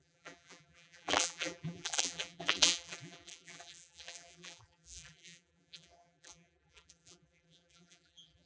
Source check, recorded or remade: remade